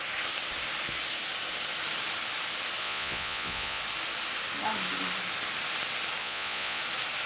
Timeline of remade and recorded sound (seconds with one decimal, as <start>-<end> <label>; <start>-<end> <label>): 0.0-2.8 recorded; 2.8-3.8 remade; 3.8-6.2 recorded; 6.2-6.8 remade; 6.8-7.3 recorded